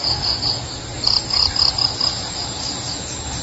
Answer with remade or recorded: recorded